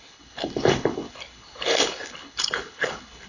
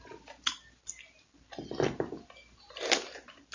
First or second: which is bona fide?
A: second